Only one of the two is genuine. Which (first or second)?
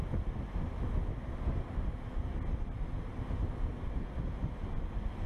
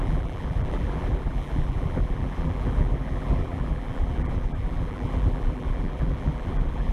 first